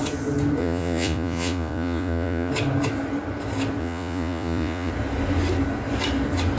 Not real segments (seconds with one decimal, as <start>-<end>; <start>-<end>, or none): 0.6-2.5; 3.8-4.9